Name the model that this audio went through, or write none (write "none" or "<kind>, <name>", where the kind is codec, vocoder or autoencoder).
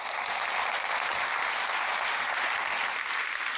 none